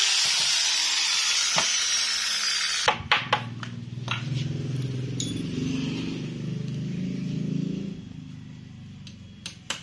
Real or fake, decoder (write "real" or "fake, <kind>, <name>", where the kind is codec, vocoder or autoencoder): real